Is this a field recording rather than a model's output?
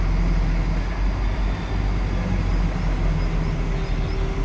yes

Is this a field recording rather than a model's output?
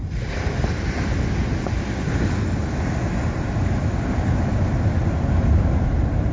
yes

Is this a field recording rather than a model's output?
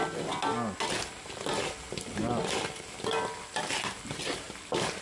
yes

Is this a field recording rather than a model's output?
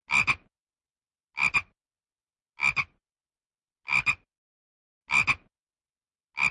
yes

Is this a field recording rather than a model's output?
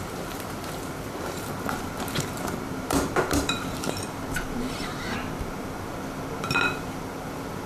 no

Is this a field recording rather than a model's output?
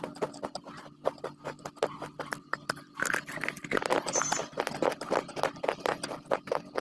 yes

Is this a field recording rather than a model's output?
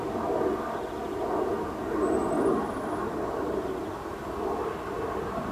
yes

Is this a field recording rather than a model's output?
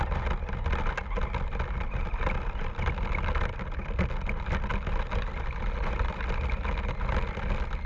yes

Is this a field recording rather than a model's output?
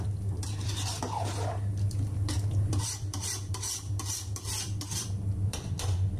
no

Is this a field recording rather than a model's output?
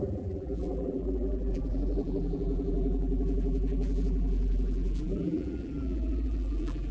no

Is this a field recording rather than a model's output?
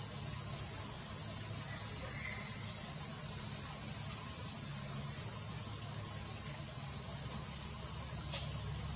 yes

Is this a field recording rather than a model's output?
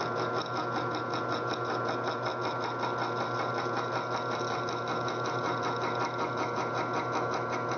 yes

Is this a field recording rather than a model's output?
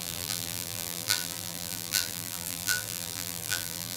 no